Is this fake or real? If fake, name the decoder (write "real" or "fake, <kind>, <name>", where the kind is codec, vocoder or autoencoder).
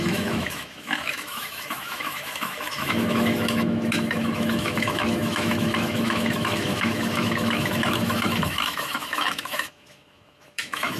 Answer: fake, autoencoder, DAC-VAE